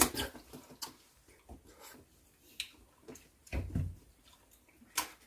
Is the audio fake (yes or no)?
no